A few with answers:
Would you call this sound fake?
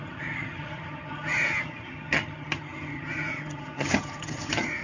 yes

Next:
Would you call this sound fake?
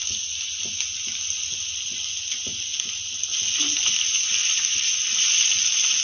no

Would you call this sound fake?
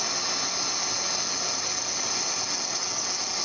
no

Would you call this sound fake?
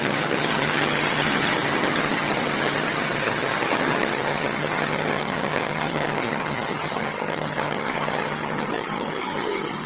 yes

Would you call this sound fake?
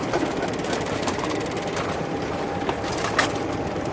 no